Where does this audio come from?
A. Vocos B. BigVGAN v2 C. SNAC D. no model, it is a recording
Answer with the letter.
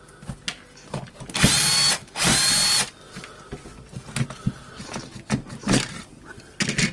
D